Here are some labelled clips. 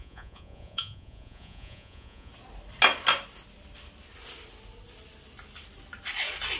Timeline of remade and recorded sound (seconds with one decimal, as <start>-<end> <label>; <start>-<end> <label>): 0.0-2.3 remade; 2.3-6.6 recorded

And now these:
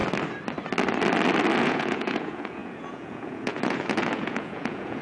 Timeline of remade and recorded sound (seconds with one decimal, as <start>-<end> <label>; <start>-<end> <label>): 0.0-1.6 recorded; 1.6-5.0 remade

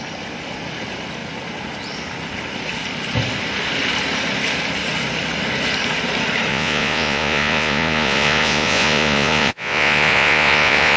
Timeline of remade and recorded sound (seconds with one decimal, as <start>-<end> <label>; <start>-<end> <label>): 0.0-6.5 recorded; 6.5-11.0 remade

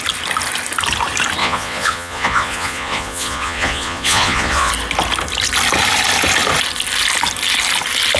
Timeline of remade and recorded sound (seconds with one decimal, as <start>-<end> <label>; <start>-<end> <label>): 0.0-1.4 recorded; 1.4-4.7 remade; 4.7-8.2 recorded

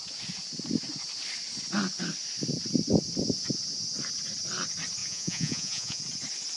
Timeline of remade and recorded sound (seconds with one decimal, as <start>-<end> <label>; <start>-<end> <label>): 0.0-5.0 recorded; 5.0-6.0 remade; 6.0-6.6 recorded